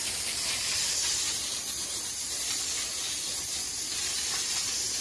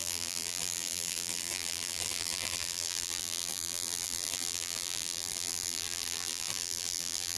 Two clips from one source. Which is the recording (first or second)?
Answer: first